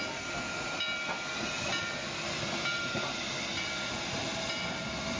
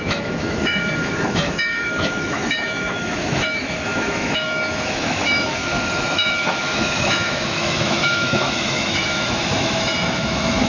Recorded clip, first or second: first